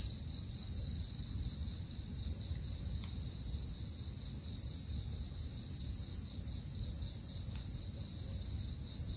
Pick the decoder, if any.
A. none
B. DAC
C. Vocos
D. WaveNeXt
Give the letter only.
A